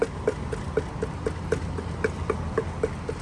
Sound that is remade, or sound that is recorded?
recorded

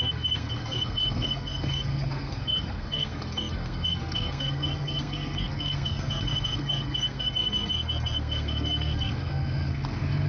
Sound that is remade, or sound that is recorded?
remade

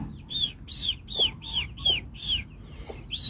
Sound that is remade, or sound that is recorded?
recorded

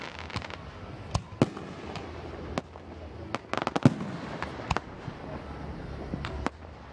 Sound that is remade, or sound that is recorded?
recorded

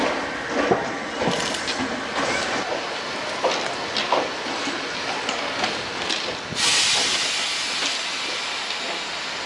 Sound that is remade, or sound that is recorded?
recorded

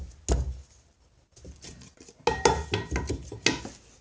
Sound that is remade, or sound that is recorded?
recorded